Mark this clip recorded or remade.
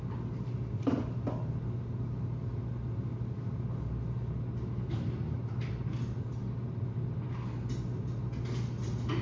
recorded